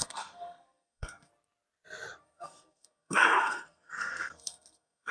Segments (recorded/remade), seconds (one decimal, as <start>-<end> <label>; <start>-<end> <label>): 0.0-1.3 remade; 1.3-2.2 recorded; 2.2-5.1 remade